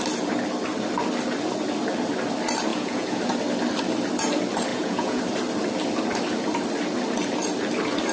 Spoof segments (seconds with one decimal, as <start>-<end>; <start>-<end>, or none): 2.7-3.2; 4.7-5.2